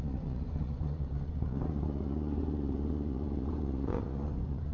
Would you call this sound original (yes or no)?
no